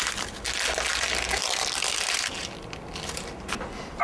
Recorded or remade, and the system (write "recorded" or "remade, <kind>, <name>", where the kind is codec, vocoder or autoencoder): recorded